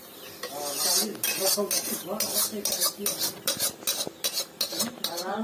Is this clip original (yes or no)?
yes